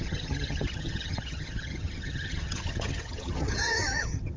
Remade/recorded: remade